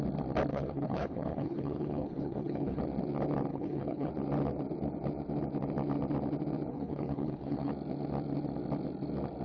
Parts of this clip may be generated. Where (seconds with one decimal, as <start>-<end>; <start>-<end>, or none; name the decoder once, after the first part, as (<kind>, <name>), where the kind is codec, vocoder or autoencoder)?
0.5-2.8 (codec, HILCodec); 3.5-4.1; 6.7-7.7